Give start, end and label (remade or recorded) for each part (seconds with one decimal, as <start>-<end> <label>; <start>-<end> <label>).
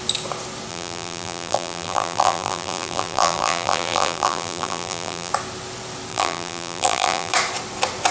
0.0-0.7 recorded; 0.7-5.3 remade; 5.3-6.1 recorded; 6.1-7.3 remade; 7.3-8.1 recorded